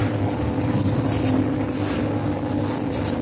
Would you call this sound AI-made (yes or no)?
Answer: no